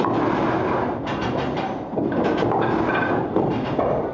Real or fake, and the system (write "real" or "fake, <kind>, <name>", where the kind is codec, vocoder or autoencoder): real